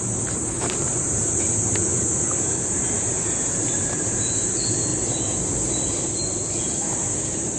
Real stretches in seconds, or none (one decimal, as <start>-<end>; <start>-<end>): 4.9-6.6